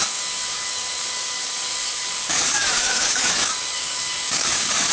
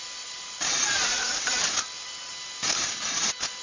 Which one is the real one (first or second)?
second